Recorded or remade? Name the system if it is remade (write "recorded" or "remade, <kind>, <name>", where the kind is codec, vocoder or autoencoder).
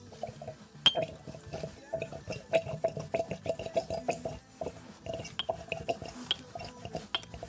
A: recorded